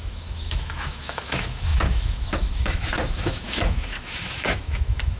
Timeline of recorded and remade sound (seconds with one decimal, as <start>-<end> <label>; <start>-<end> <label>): 0.0-5.2 remade